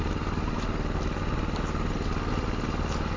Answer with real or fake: real